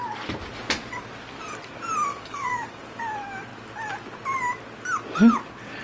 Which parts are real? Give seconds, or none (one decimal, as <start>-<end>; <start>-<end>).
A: 0.0-2.1; 3.0-5.8